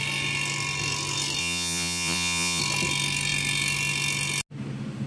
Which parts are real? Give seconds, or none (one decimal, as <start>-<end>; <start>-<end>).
0.0-1.4; 2.6-5.1